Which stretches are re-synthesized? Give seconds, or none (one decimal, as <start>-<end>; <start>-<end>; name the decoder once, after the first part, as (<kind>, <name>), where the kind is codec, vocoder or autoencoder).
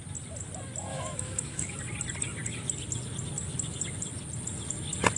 0.9-1.8 (autoencoder, DAC-VAE)